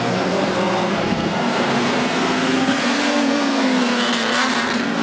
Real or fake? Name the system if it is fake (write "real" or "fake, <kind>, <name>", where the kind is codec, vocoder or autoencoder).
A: fake, codec, SNAC